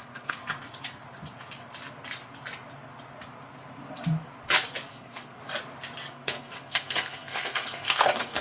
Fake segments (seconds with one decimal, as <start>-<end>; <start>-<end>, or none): 0.0-0.4; 4.9-5.4; 6.1-8.4